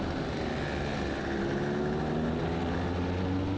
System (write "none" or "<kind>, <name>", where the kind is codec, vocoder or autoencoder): none